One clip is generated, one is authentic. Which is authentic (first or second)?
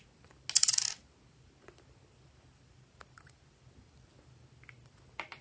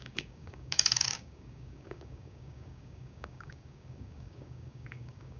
first